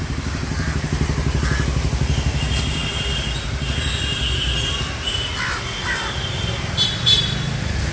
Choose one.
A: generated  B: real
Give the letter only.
B